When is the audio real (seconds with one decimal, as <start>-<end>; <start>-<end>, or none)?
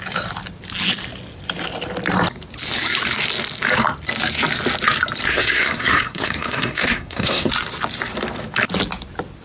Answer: 0.0-5.3; 7.5-9.4